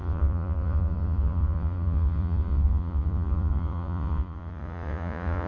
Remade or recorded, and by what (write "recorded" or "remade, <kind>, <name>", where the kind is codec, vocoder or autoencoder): remade, vocoder, Vocos